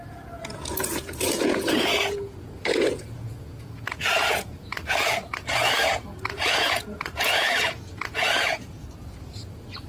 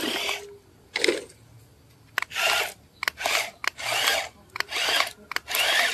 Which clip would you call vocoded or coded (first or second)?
first